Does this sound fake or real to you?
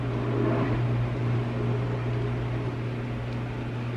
real